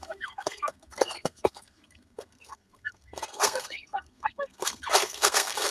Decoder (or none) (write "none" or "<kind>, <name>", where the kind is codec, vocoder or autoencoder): codec, SNAC